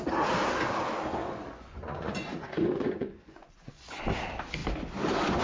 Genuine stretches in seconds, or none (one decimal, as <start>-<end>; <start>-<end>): 0.0-1.2; 4.0-5.4